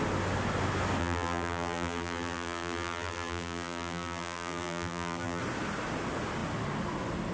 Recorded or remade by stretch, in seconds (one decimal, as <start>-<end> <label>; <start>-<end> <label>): 0.0-1.0 recorded; 1.0-5.4 remade; 5.4-7.3 recorded